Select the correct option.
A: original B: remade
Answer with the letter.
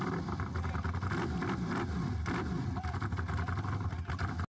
A